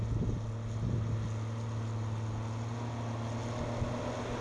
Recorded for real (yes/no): yes